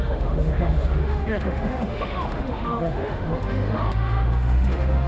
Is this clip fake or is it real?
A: fake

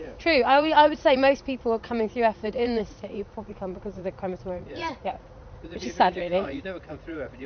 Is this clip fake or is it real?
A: fake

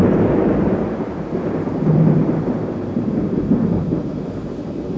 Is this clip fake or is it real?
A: fake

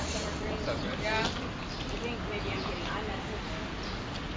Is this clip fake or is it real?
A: real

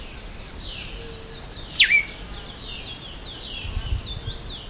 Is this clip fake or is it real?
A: real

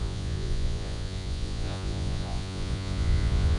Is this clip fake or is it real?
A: fake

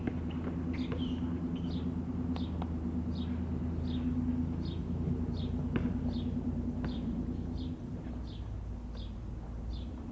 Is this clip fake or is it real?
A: real